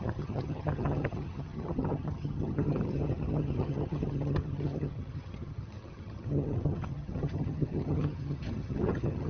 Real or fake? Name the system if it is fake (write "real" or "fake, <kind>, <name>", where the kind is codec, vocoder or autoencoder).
fake, vocoder, HiFi-GAN